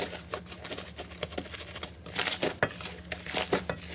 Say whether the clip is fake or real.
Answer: real